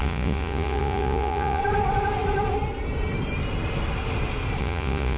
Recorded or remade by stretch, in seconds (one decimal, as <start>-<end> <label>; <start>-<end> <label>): 0.0-1.6 remade; 1.6-4.6 recorded; 4.6-5.2 remade